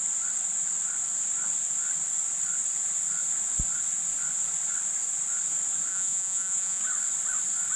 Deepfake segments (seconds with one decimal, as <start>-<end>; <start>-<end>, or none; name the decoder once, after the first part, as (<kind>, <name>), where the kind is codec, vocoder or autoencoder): 5.9-6.8 (vocoder, Vocos)